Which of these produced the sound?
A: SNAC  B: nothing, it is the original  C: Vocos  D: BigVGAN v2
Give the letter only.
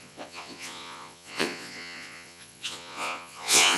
C